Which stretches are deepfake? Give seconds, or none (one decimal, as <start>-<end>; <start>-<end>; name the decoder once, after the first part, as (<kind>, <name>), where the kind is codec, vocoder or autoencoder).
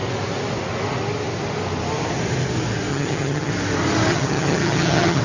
2.9-3.5 (vocoder, HiFi-GAN); 4.1-5.2